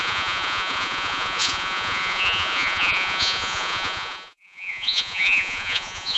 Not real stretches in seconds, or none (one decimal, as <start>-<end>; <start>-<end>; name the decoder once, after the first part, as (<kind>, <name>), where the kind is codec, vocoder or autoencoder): 0.0-6.2 (vocoder, Vocos)